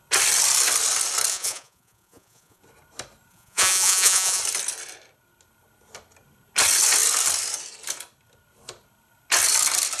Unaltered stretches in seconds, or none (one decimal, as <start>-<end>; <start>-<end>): 0.0-1.3; 2.6-3.3; 4.4-10.0